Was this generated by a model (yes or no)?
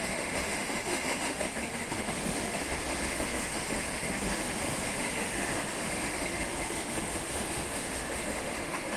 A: yes